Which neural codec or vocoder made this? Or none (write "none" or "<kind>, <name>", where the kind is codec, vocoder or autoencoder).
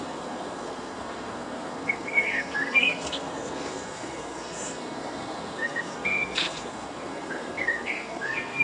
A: codec, SNAC